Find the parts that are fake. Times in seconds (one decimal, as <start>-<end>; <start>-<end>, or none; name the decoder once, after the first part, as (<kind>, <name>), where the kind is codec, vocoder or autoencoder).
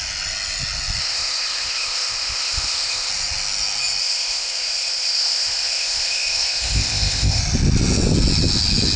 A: 1.0-3.1 (codec, ZipCodec); 4.0-7.4